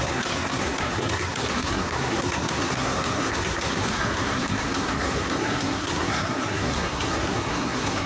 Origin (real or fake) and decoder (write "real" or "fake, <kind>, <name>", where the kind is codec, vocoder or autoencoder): fake, codec, SNAC